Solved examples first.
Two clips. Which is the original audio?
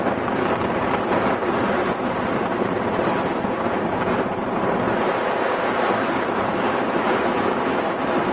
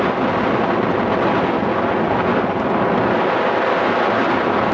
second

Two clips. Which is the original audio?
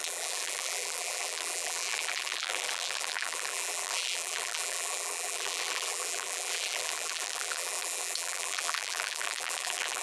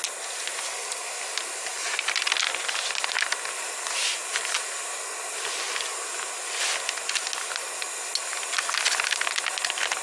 second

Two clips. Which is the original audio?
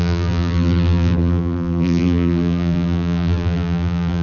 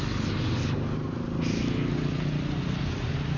second